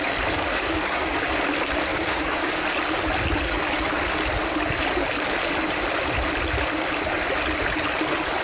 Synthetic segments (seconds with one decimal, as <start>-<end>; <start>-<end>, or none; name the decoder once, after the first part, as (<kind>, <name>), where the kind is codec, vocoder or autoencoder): 0.5-1.3 (codec, DAC); 1.9-2.6